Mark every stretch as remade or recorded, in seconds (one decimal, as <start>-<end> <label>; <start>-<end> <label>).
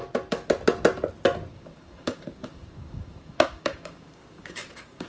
0.0-1.5 recorded; 1.5-5.1 remade